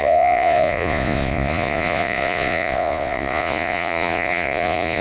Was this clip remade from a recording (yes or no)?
yes